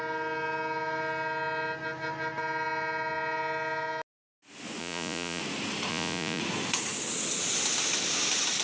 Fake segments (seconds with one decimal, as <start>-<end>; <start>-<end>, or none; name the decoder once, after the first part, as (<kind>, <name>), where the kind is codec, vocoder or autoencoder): 4.8-5.4 (vocoder, Vocos); 5.9-6.4